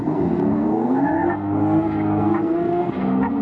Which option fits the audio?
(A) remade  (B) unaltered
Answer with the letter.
A